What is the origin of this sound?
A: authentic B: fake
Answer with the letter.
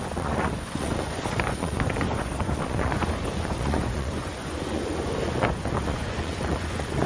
B